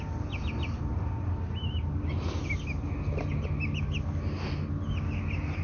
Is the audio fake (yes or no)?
no